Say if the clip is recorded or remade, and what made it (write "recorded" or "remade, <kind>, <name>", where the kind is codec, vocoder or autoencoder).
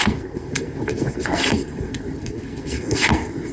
remade, codec, SNAC